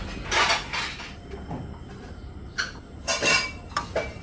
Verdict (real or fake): real